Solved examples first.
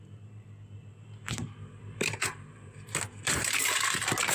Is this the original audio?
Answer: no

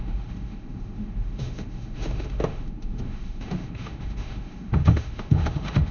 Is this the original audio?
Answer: no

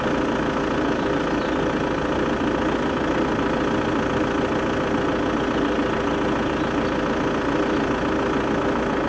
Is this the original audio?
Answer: yes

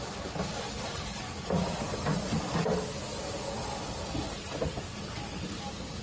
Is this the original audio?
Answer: yes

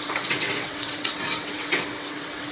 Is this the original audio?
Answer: no